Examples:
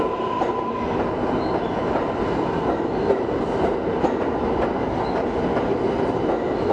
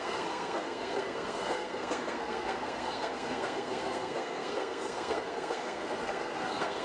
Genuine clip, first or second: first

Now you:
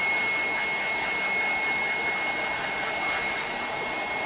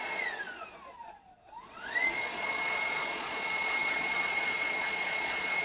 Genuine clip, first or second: first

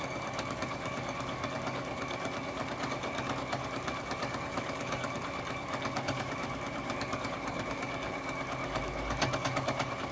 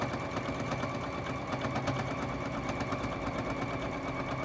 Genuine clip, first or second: second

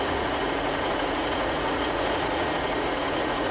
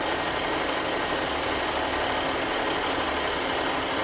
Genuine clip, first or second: second